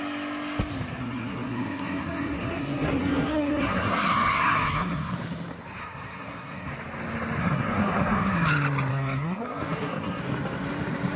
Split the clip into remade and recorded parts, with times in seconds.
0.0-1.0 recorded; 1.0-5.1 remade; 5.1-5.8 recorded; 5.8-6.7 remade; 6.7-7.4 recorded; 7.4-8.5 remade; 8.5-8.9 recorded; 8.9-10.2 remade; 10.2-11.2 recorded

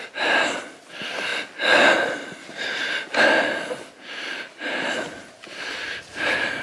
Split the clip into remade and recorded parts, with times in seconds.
0.0-1.3 recorded; 1.3-3.9 remade; 3.9-6.6 recorded

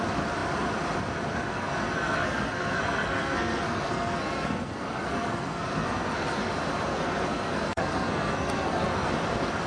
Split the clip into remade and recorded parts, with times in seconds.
0.0-1.5 recorded; 1.5-6.5 remade; 6.5-6.9 recorded; 6.9-9.1 remade; 9.1-9.7 recorded

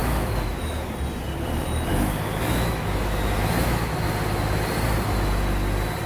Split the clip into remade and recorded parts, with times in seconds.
0.0-0.9 remade; 0.9-1.9 recorded; 1.9-4.1 remade; 4.1-6.1 recorded

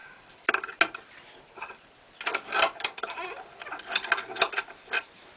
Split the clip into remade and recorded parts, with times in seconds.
0.0-0.5 remade; 0.5-2.3 recorded; 2.3-3.5 remade; 3.5-5.4 recorded

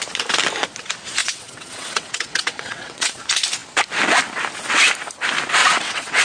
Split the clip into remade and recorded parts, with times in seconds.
0.0-1.2 recorded; 1.2-3.2 remade; 3.2-5.6 recorded; 5.6-6.2 remade

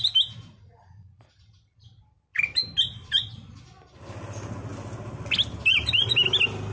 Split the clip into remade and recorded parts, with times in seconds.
0.0-6.7 recorded